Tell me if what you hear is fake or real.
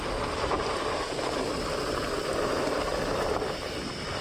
real